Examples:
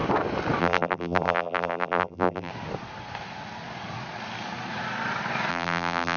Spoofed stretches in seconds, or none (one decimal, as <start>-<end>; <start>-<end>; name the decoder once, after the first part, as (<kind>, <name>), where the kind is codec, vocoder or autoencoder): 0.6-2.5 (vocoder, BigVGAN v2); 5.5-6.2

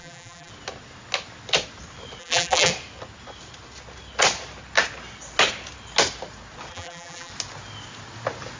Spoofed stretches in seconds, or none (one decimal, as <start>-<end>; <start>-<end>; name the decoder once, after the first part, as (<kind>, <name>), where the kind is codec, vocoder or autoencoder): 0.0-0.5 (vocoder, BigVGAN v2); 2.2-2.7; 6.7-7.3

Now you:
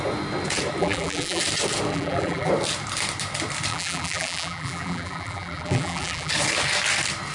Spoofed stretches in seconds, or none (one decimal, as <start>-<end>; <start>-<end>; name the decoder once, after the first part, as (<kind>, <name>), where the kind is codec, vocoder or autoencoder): 0.8-1.4 (vocoder, BigVGAN v2); 1.9-2.5; 3.7-6.3